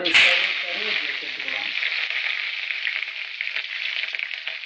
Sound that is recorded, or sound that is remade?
recorded